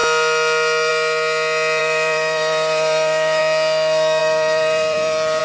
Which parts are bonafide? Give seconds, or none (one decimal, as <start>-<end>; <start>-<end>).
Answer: 0.0-1.8; 3.4-4.2